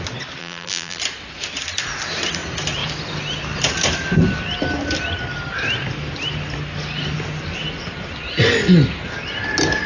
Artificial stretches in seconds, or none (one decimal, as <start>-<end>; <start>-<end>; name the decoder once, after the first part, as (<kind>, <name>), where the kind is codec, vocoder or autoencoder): 0.4-1.0 (vocoder, BigVGAN v2)